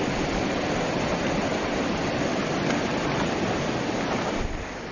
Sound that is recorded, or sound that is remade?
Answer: remade